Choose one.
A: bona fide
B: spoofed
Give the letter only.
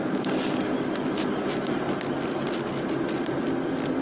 A